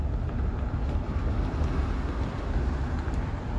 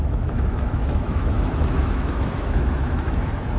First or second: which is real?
first